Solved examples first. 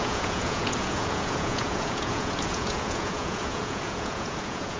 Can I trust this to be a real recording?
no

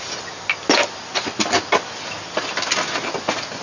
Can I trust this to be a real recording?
yes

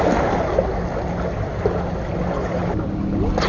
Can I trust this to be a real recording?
yes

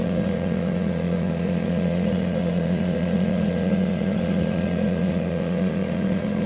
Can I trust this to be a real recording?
no